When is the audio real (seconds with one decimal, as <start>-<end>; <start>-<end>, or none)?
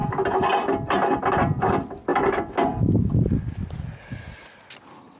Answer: 0.0-5.2